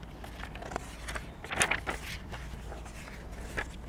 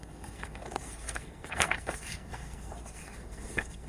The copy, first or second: second